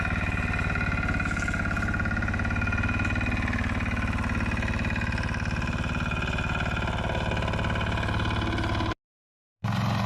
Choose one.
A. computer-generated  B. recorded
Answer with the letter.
B